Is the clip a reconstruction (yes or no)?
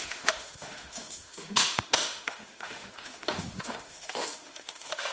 yes